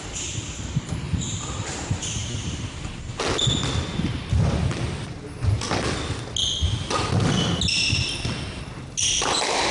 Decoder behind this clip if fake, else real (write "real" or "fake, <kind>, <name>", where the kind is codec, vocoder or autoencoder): real